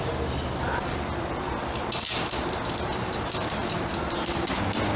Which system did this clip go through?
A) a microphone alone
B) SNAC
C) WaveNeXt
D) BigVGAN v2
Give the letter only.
A